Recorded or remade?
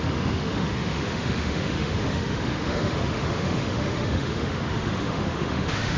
remade